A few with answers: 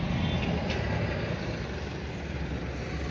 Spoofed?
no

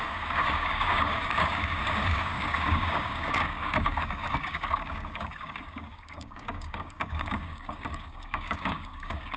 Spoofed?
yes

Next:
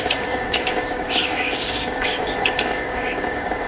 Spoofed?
yes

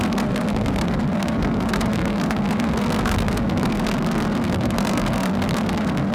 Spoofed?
yes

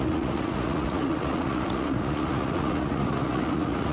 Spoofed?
yes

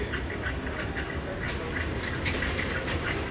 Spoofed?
no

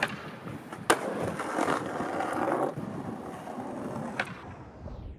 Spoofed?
no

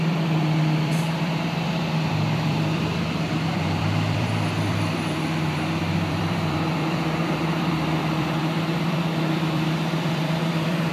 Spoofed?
yes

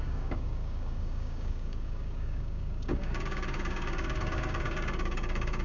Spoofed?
yes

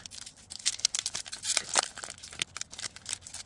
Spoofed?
no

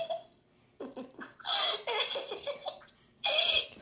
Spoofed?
no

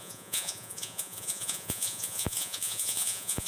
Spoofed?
yes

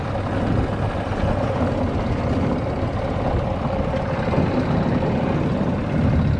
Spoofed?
no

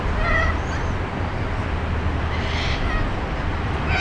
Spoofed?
no